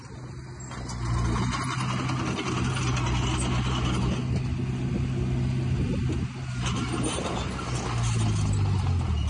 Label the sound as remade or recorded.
recorded